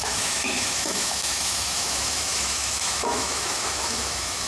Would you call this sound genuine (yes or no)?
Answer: no